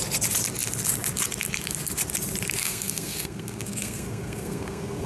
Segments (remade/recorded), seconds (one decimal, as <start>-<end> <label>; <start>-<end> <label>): 0.0-2.6 recorded; 2.6-5.1 remade